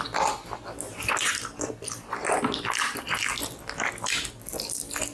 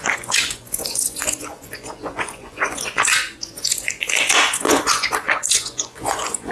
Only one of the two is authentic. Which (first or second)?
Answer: first